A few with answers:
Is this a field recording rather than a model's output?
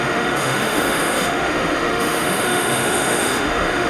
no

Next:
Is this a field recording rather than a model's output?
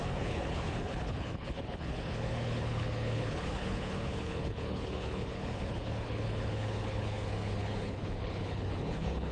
no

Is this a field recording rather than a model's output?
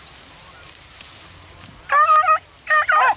yes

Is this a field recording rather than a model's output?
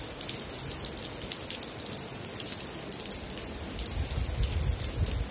yes